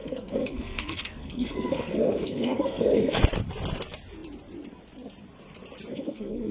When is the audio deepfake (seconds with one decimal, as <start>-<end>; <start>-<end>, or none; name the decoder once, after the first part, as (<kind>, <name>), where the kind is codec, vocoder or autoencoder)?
0.0-3.2 (codec, SNAC); 5.9-6.5